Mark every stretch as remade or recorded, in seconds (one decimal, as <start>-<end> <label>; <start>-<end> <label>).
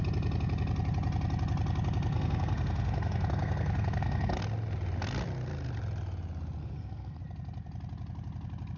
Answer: 0.0-2.1 recorded; 2.1-4.4 remade; 4.4-6.6 recorded; 6.6-7.2 remade; 7.2-8.8 recorded